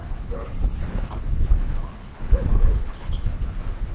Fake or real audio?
fake